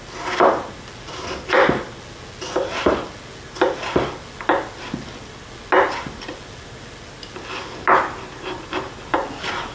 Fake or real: real